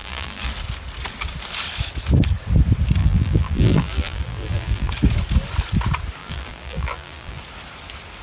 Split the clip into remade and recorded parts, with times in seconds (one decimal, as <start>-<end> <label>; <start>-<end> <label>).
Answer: 0.0-0.5 remade; 0.5-3.0 recorded; 3.0-4.9 remade; 4.9-6.2 recorded; 6.2-7.4 remade; 7.4-8.2 recorded